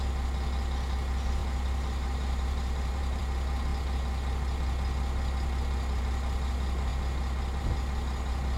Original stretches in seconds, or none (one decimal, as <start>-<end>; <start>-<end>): 0.0-1.4; 3.2-8.6